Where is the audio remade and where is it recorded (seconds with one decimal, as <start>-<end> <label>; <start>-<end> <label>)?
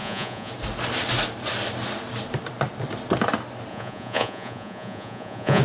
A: 0.0-0.5 remade; 0.5-3.7 recorded; 3.7-5.6 remade